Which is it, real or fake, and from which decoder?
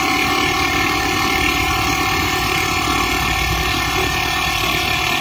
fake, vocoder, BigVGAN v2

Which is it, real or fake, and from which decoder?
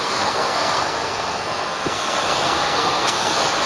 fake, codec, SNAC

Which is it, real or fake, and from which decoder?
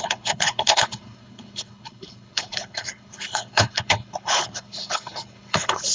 fake, codec, HILCodec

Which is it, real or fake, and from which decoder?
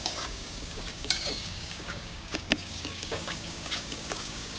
fake, codec, DAC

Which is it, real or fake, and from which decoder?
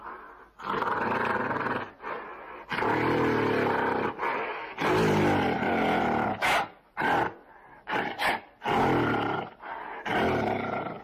real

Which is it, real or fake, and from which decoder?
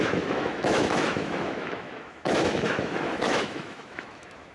fake, autoencoder, DAC-VAE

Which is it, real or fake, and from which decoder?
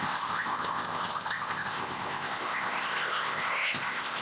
fake, codec, ZipCodec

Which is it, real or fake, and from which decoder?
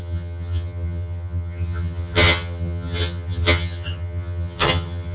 fake, vocoder, HiFi-GAN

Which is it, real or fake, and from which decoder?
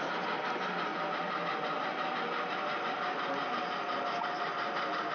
real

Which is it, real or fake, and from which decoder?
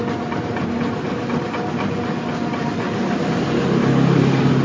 real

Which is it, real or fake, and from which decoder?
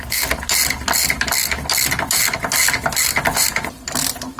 real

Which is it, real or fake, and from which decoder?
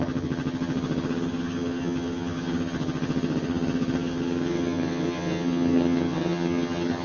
fake, vocoder, HiFi-GAN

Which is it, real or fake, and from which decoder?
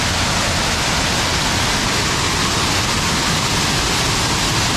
real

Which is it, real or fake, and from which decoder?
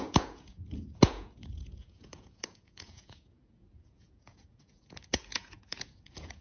fake, vocoder, Vocos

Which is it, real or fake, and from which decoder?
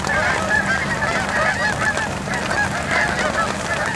real